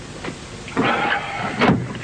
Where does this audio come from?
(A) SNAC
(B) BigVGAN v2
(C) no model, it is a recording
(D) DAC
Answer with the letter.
C